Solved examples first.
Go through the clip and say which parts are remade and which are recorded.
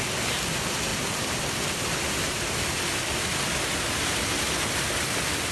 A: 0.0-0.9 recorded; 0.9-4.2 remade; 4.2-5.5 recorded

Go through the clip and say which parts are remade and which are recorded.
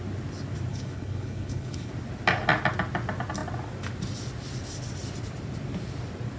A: 0.0-0.7 recorded; 0.7-1.9 remade; 1.9-6.4 recorded